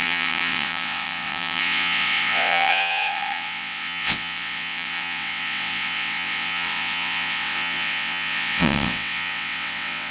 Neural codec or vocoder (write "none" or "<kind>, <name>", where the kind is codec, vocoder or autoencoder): vocoder, WaveNeXt